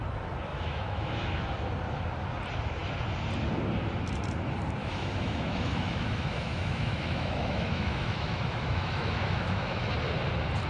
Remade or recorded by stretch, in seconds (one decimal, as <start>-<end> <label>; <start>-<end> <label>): 0.0-0.5 recorded; 0.5-1.4 remade; 1.4-4.8 recorded; 4.8-9.9 remade; 9.9-10.7 recorded

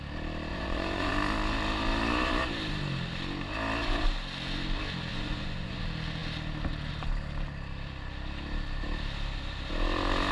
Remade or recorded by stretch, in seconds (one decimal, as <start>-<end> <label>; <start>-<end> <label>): 0.0-0.5 recorded; 0.5-1.1 remade; 1.1-5.1 recorded; 5.1-5.8 remade; 5.8-10.3 recorded

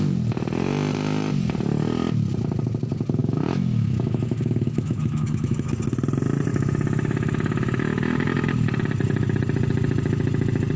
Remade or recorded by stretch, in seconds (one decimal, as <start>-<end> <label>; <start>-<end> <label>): 0.0-3.2 recorded; 3.2-5.7 remade; 5.7-6.5 recorded; 6.5-8.5 remade; 8.5-10.8 recorded

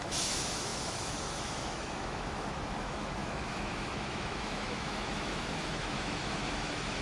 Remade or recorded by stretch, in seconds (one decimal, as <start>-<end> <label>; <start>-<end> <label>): 0.0-7.0 remade

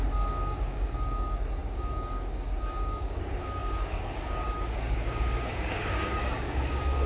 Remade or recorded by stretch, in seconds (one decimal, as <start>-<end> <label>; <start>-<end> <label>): 0.0-7.1 remade

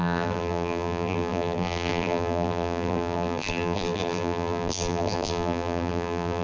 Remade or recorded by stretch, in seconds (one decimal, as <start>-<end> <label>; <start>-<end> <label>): 0.0-6.4 remade